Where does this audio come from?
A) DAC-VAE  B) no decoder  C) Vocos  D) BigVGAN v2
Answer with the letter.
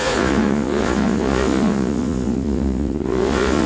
C